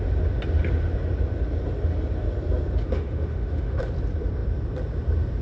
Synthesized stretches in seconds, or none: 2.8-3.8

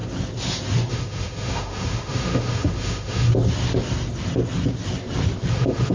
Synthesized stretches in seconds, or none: 0.9-3.3; 5.5-5.9

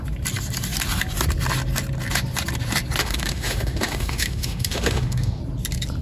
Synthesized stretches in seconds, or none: 3.0-5.4

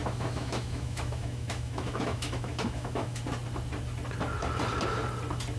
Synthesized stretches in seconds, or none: 0.0-3.2

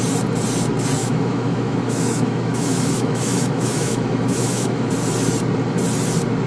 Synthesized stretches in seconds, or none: 1.0-4.9

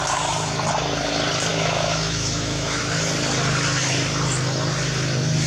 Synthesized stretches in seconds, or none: 1.5-2.8